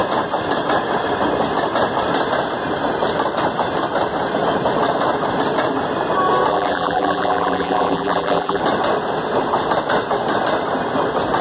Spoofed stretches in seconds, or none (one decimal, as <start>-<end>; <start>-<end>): 6.5-8.6